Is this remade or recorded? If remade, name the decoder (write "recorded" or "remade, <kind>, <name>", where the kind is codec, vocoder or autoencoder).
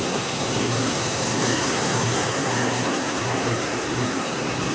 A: remade, codec, SNAC